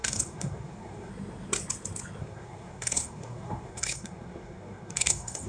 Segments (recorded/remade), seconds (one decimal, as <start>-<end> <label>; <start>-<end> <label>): 0.0-1.1 remade; 1.1-2.2 recorded; 2.2-5.5 remade